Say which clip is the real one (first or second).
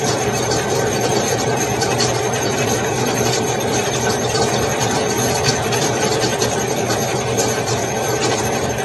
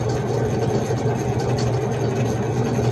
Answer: second